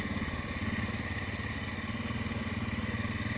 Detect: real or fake real